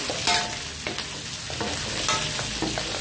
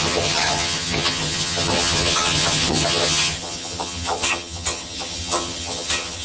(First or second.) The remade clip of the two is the second